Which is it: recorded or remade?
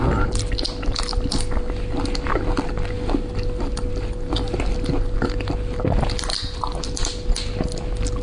recorded